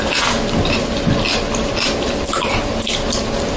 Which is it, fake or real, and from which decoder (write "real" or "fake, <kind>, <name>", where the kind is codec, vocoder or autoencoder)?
real